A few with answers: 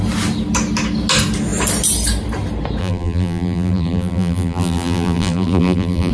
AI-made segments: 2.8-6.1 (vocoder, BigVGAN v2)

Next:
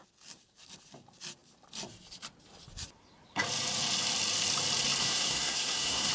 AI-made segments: 5.0-6.1 (codec, SNAC)